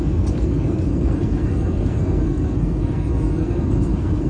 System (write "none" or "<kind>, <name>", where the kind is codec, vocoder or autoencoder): codec, SNAC